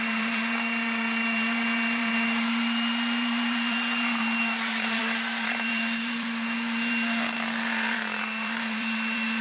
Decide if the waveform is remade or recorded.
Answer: remade